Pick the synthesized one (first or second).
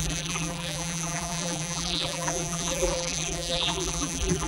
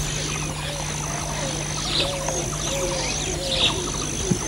first